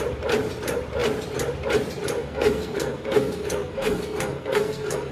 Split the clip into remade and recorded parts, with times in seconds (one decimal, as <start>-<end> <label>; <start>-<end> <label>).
0.0-2.2 recorded; 2.2-5.1 remade